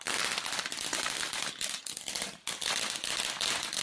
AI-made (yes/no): no